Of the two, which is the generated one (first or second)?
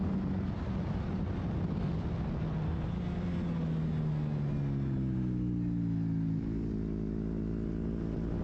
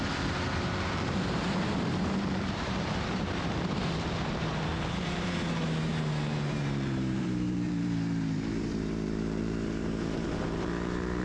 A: second